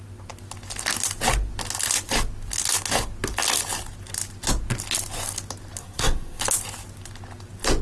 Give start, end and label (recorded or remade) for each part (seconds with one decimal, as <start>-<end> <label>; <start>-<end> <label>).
0.0-5.8 recorded; 5.8-6.4 remade; 6.4-7.8 recorded

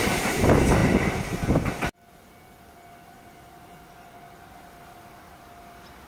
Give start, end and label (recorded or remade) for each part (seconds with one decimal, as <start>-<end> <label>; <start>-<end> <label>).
0.0-6.1 recorded